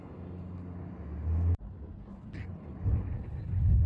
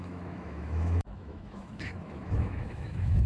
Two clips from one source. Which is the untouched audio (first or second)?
first